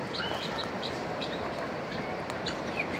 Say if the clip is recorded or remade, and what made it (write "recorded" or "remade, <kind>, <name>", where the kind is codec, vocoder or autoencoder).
recorded